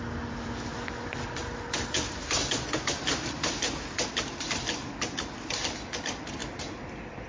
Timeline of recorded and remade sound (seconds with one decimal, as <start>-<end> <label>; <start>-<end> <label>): 0.0-7.3 recorded